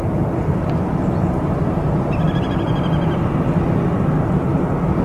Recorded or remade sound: recorded